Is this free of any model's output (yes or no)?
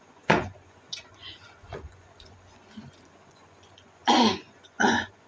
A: no